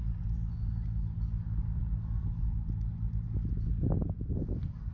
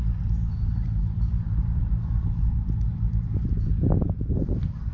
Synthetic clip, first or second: second